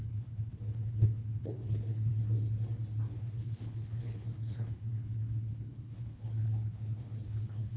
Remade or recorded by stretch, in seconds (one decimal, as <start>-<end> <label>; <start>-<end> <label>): 0.0-2.1 remade; 2.1-3.1 recorded; 3.1-7.8 remade